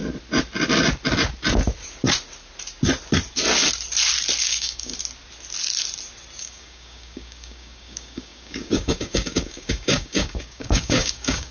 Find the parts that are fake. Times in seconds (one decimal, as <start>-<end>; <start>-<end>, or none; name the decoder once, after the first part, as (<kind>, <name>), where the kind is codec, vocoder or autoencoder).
4.4-4.9 (codec, DAC); 6.4-11.5